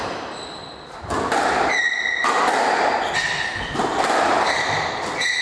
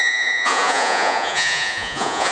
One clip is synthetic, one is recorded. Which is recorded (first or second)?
first